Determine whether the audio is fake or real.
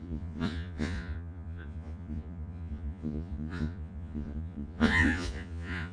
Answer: fake